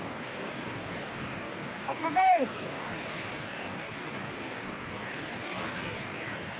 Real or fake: fake